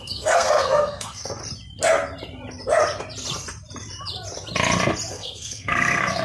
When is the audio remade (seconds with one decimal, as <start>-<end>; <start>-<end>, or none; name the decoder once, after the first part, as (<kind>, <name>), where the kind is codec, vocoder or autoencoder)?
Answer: 0.0-1.4 (codec, SNAC); 5.1-6.2